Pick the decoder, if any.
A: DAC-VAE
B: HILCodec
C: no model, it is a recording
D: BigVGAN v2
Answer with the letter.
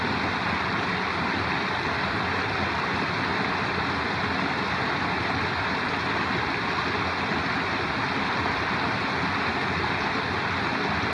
C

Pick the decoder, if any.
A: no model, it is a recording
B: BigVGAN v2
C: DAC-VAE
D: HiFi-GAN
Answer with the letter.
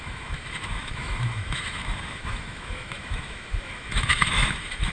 C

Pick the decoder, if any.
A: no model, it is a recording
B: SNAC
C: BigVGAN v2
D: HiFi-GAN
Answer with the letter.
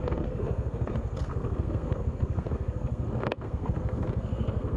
B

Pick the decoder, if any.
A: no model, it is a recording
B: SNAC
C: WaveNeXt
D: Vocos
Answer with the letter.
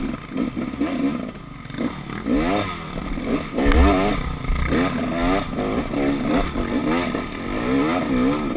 A